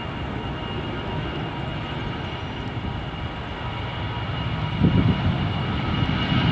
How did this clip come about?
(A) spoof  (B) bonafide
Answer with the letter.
B